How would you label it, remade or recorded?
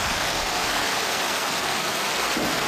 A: remade